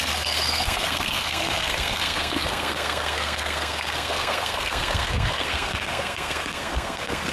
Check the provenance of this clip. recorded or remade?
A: remade